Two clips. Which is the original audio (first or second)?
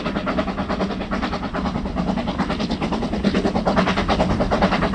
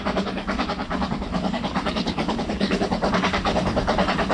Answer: first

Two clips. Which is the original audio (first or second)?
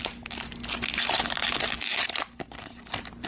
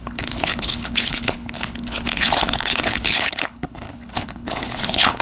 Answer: first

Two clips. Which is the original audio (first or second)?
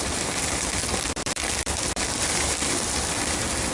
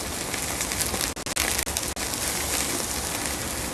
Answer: second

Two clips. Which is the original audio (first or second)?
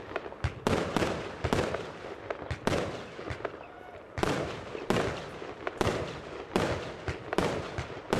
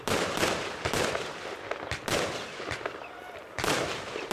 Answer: first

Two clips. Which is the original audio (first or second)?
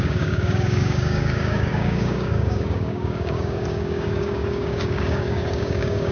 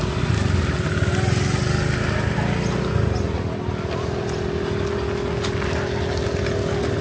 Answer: second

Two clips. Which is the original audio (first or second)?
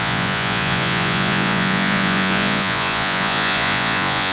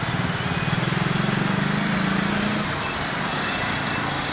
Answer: second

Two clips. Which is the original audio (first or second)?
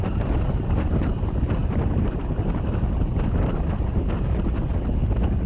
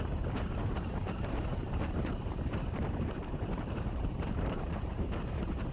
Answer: first